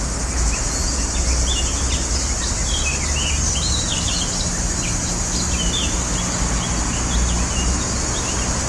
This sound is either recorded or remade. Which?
recorded